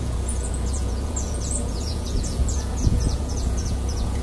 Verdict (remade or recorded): remade